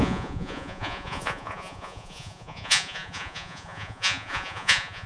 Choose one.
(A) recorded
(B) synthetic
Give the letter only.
B